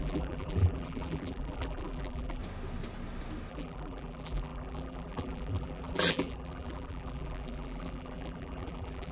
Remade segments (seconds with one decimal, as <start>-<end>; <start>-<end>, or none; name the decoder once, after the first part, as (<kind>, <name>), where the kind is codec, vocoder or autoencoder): 0.0-2.4 (vocoder, BigVGAN v2); 3.5-9.1

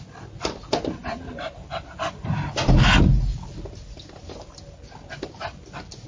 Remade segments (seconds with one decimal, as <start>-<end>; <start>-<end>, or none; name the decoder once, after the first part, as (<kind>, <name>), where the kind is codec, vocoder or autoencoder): none

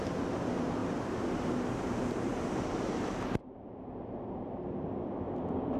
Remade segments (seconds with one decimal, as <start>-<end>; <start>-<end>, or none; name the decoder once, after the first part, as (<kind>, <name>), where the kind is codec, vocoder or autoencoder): none

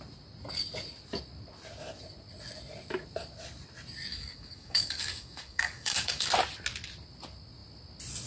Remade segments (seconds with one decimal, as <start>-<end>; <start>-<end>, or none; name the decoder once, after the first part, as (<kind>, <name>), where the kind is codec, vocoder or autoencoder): 4.1-6.3 (codec, DAC)

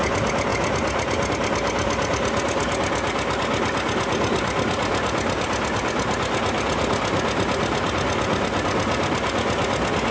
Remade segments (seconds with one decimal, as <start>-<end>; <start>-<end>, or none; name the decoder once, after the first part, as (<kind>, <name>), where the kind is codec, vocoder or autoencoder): none

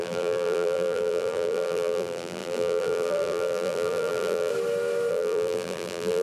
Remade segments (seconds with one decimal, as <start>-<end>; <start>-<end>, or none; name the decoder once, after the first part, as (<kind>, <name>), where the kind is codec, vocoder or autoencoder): 0.0-4.5 (vocoder, BigVGAN v2); 5.1-6.2

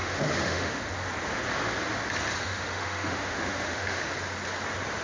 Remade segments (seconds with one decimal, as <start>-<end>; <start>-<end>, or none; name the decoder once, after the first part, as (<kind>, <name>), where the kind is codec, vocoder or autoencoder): 0.0-0.8 (autoencoder, DAC-VAE); 2.4-4.1